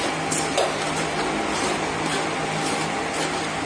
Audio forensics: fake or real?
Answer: real